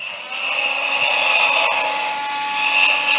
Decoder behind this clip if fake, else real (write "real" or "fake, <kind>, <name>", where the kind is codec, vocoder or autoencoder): real